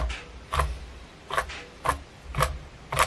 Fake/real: real